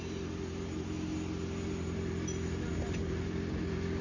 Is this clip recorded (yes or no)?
yes